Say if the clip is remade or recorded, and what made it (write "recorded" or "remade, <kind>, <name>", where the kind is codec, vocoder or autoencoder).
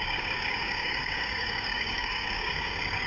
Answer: remade, codec, DAC